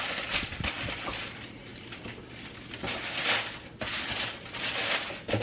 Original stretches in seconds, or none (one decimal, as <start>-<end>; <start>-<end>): 0.0-5.4